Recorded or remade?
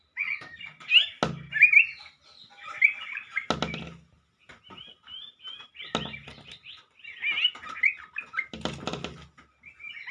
recorded